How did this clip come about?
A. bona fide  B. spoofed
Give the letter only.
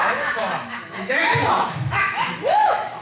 B